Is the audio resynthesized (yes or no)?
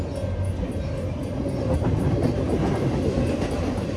no